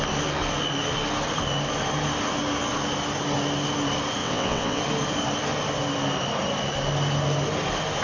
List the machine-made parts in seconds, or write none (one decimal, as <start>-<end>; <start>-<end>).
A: 4.2-4.8